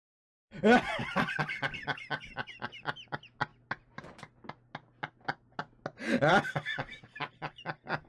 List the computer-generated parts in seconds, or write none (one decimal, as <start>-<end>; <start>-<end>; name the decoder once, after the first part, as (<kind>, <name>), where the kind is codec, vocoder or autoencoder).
0.4-1.3 (vocoder, Vocos); 6.7-7.3